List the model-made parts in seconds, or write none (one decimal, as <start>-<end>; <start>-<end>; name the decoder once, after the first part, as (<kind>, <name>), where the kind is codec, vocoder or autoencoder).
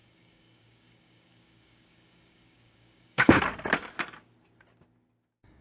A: 0.0-3.4 (codec, DAC)